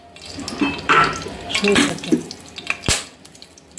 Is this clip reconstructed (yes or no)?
no